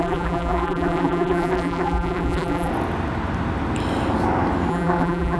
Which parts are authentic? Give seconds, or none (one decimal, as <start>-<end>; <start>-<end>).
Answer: 2.7-4.7